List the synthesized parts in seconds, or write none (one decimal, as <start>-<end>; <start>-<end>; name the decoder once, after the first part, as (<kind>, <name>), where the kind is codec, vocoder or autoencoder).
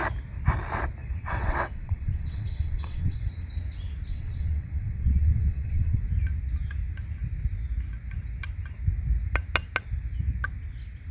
1.0-3.3 (vocoder, WaveNeXt); 4.1-6.0